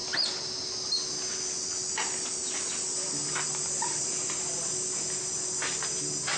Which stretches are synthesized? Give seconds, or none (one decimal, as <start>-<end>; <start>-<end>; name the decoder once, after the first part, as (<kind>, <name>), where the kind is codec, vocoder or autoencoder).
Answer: none